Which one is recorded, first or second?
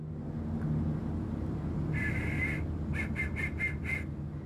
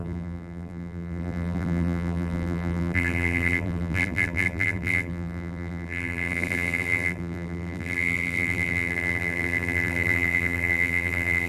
first